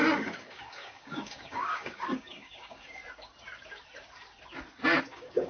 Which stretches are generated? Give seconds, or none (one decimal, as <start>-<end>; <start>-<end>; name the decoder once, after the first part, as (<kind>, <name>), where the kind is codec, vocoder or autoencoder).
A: 0.0-3.0 (codec, DAC); 5.0-5.5